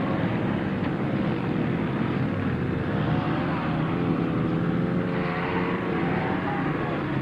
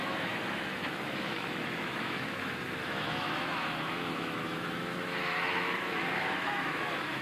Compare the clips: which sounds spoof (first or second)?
second